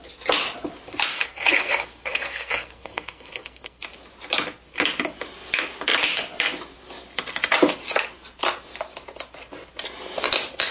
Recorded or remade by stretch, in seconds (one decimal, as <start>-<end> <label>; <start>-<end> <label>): 0.0-1.1 recorded; 1.1-3.8 remade; 3.8-10.7 recorded